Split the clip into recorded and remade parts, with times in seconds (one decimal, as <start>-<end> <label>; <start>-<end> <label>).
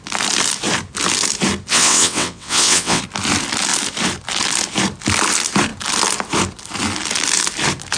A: 0.0-1.7 recorded; 1.7-3.0 remade; 3.0-8.0 recorded